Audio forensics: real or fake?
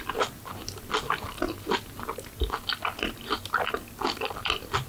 real